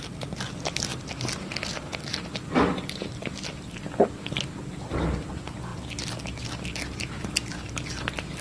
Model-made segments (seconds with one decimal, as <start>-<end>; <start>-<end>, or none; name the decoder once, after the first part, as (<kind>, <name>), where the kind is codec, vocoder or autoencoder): none